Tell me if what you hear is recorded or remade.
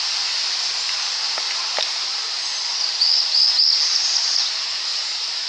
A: recorded